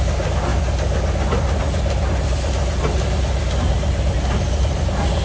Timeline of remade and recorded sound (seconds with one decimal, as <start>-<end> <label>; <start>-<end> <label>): 0.0-5.2 recorded